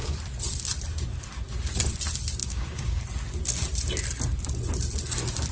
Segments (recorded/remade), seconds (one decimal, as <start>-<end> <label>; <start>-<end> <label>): 0.0-2.4 recorded; 2.4-3.0 remade; 3.0-5.5 recorded